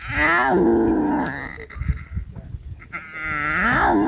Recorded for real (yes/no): yes